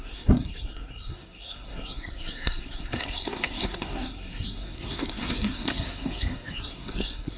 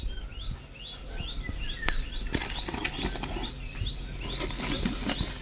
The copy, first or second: first